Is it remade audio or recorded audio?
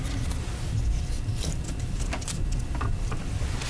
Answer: recorded